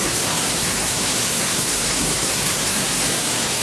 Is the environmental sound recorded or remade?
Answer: remade